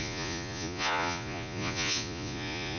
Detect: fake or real fake